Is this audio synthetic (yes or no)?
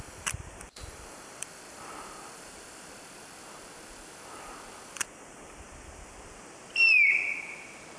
yes